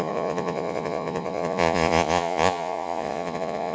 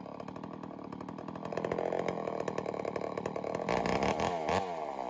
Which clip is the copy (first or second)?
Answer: first